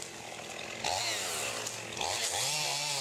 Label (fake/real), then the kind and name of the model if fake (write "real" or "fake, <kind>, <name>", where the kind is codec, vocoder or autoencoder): real